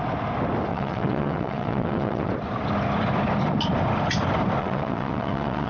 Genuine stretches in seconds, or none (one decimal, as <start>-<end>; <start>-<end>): 0.0-0.7; 2.3-4.6